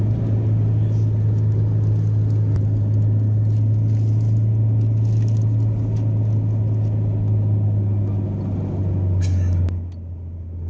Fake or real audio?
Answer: real